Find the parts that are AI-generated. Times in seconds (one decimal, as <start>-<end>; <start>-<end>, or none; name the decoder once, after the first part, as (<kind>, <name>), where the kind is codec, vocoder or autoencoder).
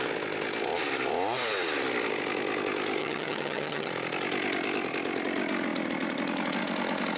3.0-3.9 (vocoder, HiFi-GAN)